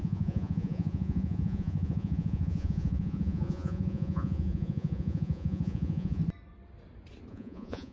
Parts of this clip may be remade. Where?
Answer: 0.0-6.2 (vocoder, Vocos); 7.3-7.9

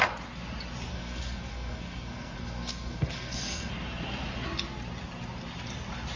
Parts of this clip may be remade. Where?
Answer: 0.9-3.7 (codec, SNAC)

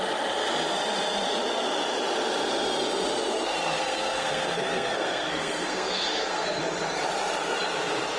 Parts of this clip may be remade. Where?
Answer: 3.8-6.6 (codec, SNAC)

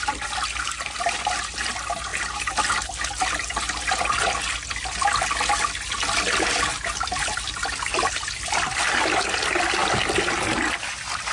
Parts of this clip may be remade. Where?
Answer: none

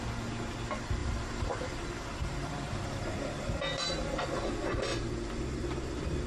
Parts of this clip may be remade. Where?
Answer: 1.0-4.4 (vocoder, BigVGAN v2); 4.9-6.3